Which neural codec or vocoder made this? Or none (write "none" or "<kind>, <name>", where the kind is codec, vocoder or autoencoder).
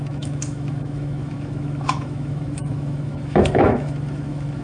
autoencoder, DAC-VAE